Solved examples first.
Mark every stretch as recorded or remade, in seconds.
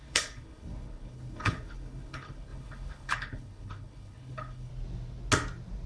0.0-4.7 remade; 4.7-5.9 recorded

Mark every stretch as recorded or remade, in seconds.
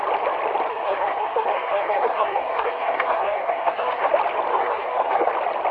0.0-0.7 recorded; 0.7-4.1 remade; 4.1-4.5 recorded; 4.5-5.3 remade; 5.3-5.7 recorded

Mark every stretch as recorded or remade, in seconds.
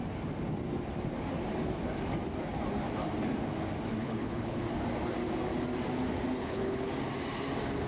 0.0-4.0 recorded; 4.0-4.6 remade; 4.6-6.4 recorded; 6.4-6.9 remade; 6.9-7.9 recorded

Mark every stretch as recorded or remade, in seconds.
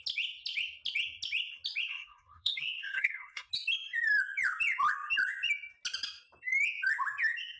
0.0-1.9 recorded; 1.9-3.5 remade; 3.5-7.6 recorded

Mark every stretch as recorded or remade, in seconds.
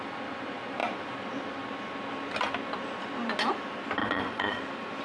0.0-4.0 recorded; 4.0-4.6 remade; 4.6-5.0 recorded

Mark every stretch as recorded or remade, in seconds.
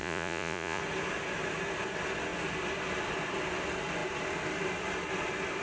0.0-0.8 remade; 0.8-5.6 recorded